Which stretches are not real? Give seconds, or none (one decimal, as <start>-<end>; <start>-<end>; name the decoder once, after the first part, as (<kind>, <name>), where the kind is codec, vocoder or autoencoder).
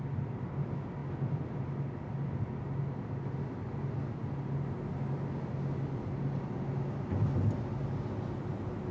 none